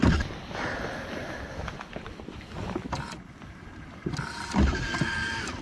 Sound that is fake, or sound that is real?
real